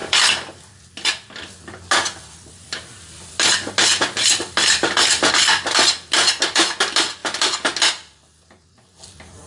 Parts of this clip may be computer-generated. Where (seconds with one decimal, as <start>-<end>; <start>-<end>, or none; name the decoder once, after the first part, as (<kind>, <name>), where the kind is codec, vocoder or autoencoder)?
none